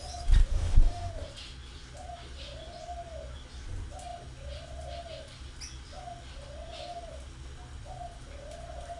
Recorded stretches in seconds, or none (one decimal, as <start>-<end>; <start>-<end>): 0.0-0.5; 1.1-9.0